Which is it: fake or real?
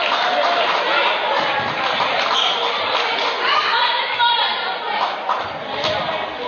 real